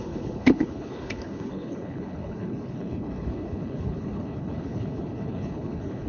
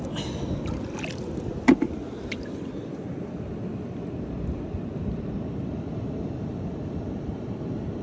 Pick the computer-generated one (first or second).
first